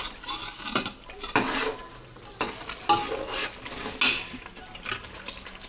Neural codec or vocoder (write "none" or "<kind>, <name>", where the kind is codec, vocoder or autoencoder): none